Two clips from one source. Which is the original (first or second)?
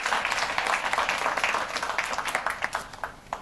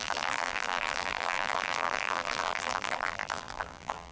first